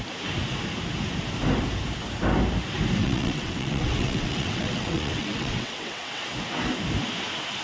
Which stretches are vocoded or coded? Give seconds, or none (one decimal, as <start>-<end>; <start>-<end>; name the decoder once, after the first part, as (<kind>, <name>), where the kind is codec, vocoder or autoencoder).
3.0-6.2 (vocoder, WaveNeXt)